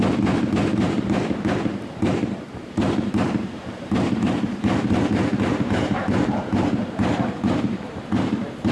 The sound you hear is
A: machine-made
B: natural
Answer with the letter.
A